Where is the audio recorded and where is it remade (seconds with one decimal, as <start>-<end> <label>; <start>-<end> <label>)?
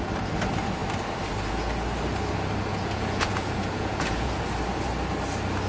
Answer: 0.0-2.7 recorded; 2.7-4.4 remade; 4.4-5.7 recorded